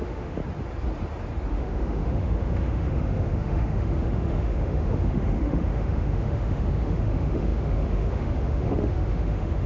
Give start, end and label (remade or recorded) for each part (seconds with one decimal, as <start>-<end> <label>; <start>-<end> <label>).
0.0-0.4 remade; 0.4-1.5 recorded; 1.5-9.7 remade